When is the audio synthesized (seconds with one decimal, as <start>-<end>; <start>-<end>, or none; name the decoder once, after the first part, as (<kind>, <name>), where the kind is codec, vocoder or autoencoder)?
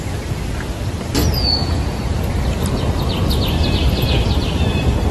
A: 1.2-2.3 (vocoder, Vocos)